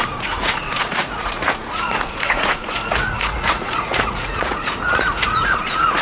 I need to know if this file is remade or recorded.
remade